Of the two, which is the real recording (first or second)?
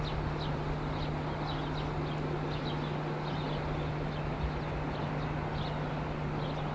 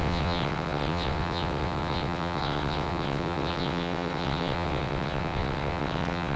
first